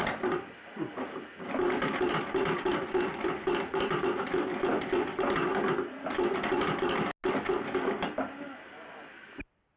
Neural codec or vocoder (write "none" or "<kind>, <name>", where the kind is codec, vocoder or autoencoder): none